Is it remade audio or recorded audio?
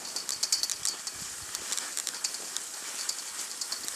recorded